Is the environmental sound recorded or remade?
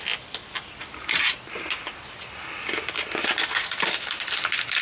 recorded